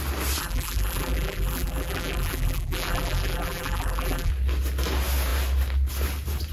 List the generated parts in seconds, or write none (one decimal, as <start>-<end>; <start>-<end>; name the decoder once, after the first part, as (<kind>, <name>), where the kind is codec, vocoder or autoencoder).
0.4-4.3 (vocoder, BigVGAN v2)